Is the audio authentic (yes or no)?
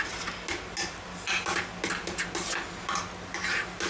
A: yes